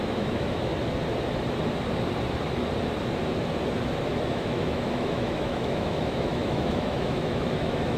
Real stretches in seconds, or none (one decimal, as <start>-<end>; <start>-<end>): 0.7-4.3